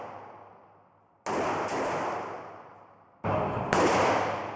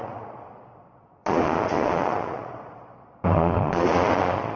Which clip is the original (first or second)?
first